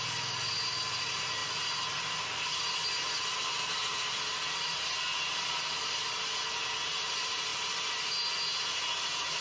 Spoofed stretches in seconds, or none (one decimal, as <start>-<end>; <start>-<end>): none